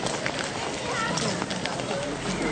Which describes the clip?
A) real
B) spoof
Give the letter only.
A